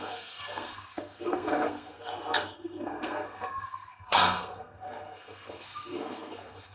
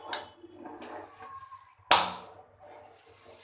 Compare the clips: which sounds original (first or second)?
second